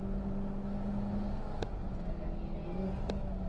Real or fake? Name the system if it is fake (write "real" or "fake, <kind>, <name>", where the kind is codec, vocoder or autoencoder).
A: real